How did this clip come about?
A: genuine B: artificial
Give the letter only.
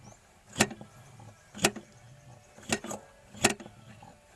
A